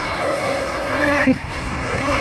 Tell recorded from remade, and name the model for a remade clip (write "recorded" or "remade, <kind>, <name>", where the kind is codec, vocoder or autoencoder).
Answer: remade, codec, SNAC